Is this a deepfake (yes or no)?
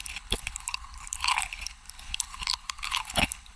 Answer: yes